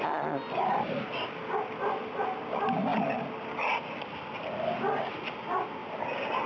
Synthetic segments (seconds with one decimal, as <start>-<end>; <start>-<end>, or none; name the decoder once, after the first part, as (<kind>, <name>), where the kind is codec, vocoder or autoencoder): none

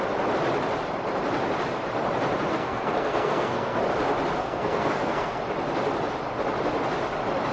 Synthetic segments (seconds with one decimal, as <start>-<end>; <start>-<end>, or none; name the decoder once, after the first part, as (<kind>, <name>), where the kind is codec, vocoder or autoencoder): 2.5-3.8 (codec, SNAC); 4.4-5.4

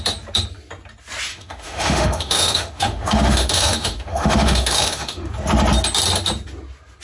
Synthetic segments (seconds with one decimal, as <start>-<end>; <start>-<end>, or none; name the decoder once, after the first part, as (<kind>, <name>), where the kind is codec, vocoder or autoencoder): 1.3-5.3 (autoencoder, DAC-VAE)